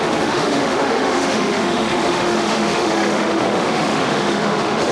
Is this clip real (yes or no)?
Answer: no